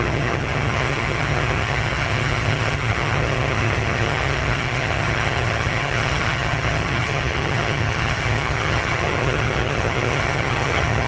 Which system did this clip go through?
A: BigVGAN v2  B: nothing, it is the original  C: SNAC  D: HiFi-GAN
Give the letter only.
D